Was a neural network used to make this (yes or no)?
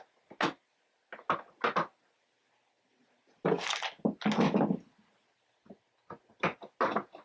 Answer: no